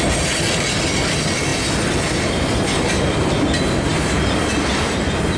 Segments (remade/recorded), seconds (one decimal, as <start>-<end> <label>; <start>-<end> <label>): 0.0-5.4 recorded